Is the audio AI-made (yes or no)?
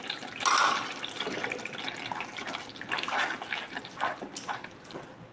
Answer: no